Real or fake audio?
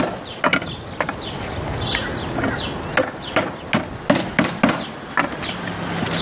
real